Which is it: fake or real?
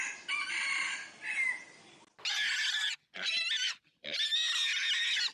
real